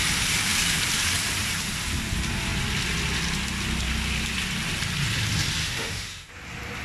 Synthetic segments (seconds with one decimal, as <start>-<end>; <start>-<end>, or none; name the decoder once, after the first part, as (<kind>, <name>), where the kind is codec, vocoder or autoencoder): 5.6-6.3 (autoencoder, DAC-VAE)